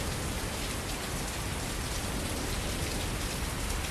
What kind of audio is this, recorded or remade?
recorded